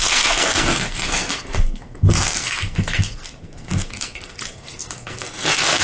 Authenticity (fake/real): fake